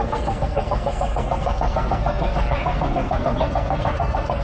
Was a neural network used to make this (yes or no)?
yes